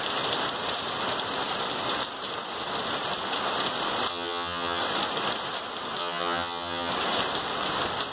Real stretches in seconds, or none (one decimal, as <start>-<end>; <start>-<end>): 0.0-4.1; 4.8-6.0; 6.9-8.1